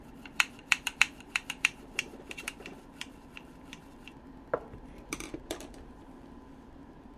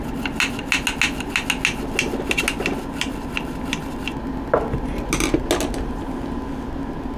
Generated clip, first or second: first